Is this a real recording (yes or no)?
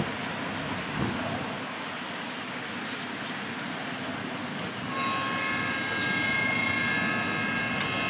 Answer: yes